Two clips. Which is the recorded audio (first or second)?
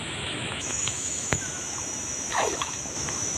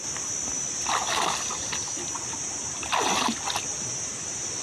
second